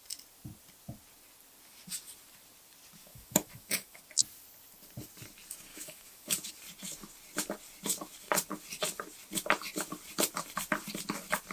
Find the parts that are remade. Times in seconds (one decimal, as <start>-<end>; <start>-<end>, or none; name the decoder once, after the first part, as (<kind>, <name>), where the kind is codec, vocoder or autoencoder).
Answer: 3.0-4.0 (autoencoder, DAC-VAE); 5.7-6.5